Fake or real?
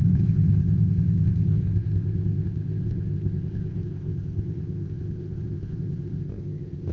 fake